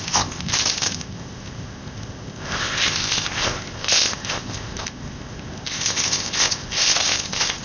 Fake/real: fake